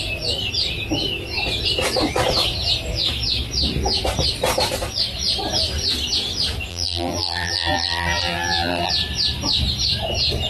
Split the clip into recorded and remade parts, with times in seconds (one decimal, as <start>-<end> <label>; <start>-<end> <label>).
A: 0.0-6.7 recorded; 6.7-8.9 remade; 8.9-10.5 recorded